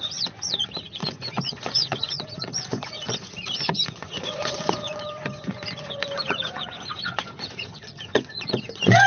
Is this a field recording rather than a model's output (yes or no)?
no